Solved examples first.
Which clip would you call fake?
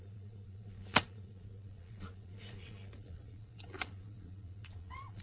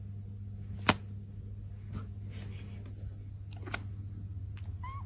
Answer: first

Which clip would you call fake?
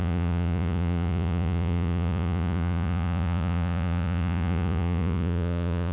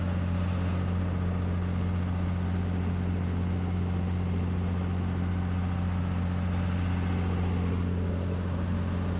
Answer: first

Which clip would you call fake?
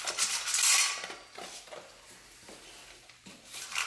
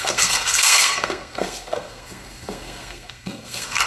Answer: second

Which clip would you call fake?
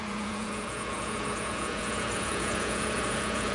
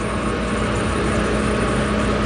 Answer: first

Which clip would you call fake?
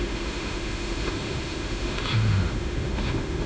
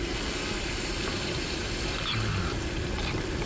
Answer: first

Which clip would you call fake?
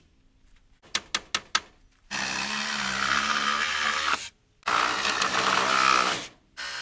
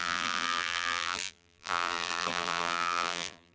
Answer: second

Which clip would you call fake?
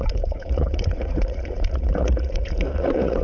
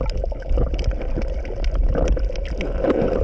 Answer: first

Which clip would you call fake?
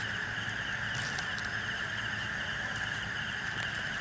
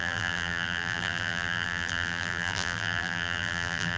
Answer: second